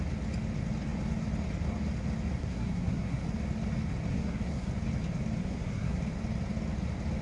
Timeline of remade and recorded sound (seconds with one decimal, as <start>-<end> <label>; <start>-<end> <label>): 0.0-2.4 recorded; 2.4-3.2 remade; 3.2-4.1 recorded; 4.1-4.7 remade; 4.7-5.4 recorded; 5.4-6.0 remade; 6.0-7.2 recorded